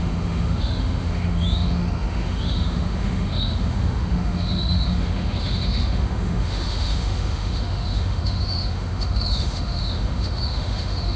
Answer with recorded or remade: remade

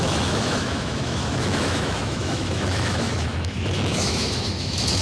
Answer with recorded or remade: remade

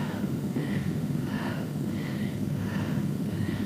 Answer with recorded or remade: remade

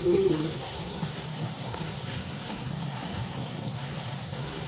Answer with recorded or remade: remade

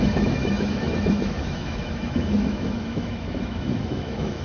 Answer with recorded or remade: remade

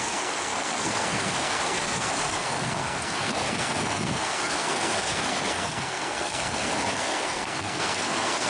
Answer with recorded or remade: remade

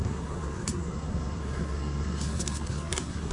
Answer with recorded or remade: remade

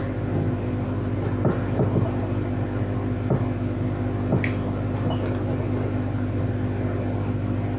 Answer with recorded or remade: recorded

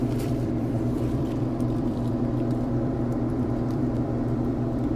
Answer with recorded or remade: remade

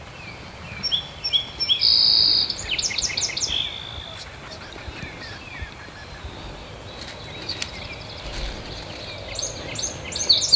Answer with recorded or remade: recorded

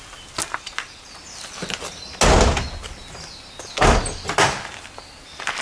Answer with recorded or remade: recorded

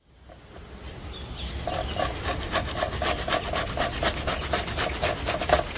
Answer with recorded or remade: recorded